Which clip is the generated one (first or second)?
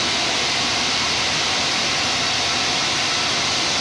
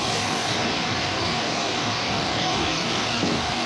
second